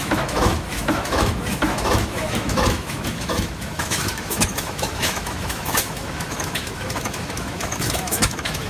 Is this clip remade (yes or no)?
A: yes